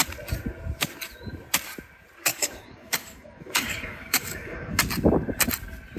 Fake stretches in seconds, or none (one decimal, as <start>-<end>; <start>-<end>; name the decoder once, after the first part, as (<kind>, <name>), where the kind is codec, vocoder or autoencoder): 2.3-4.8 (codec, DAC)